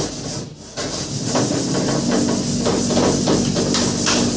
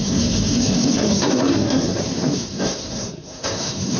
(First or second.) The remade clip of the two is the second